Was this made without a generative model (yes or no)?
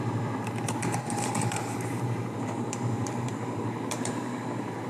no